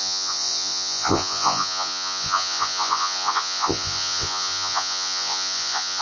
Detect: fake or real fake